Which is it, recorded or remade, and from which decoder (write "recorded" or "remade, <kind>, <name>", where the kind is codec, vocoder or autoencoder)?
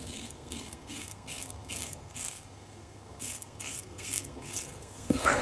remade, codec, SNAC